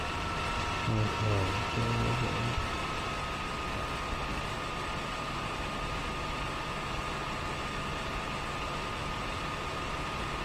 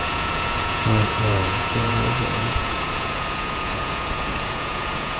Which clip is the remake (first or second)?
second